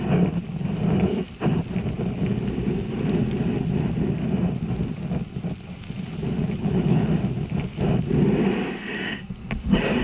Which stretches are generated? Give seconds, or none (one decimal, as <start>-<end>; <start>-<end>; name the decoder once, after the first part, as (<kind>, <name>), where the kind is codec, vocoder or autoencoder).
6.6-7.1 (codec, HILCodec)